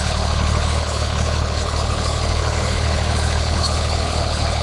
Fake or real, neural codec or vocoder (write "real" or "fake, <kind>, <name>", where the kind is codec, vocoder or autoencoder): fake, codec, HILCodec